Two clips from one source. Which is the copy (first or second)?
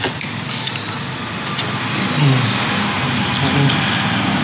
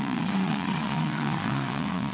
second